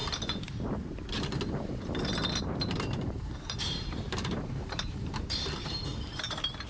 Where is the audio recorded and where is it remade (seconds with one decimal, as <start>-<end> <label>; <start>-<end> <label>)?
0.0-2.4 recorded; 2.4-6.7 remade